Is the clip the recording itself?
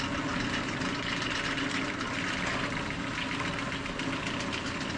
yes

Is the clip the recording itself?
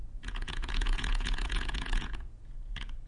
no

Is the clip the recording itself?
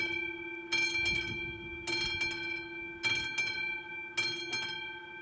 yes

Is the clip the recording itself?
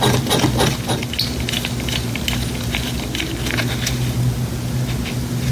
yes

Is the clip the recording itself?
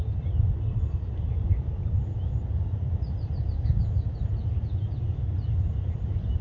yes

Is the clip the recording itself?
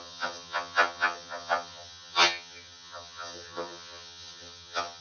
no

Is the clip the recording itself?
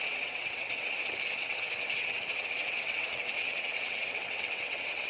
no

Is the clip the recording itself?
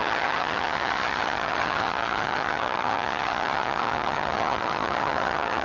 no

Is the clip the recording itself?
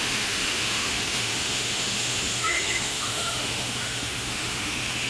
no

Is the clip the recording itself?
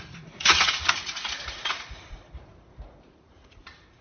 no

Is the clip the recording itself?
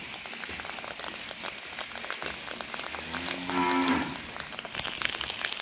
yes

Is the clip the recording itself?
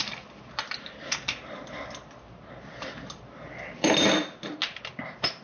yes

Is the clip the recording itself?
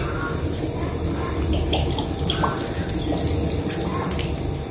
yes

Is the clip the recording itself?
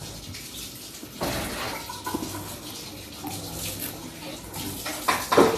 yes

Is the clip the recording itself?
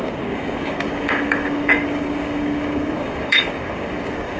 no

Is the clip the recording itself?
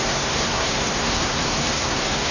no